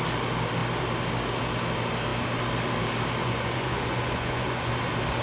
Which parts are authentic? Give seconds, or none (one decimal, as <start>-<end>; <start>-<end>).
0.0-3.2; 4.7-5.2